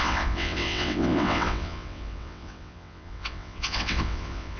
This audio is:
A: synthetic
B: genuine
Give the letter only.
A